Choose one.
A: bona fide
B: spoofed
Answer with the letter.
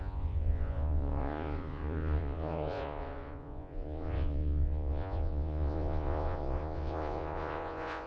B